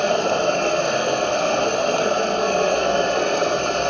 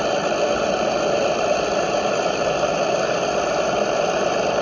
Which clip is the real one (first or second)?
second